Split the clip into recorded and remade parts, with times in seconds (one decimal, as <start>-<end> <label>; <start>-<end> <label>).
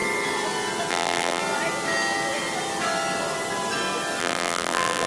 0.0-0.9 recorded; 0.9-1.4 remade; 1.4-4.2 recorded; 4.2-5.1 remade